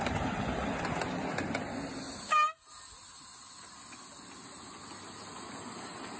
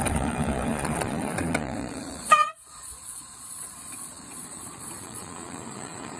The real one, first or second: first